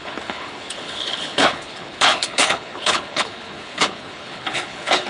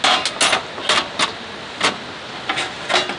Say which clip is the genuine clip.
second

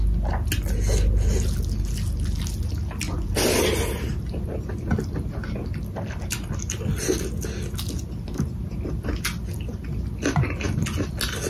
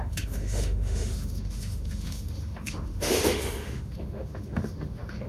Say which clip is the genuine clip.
first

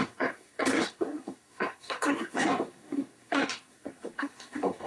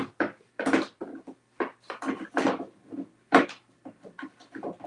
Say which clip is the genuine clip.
second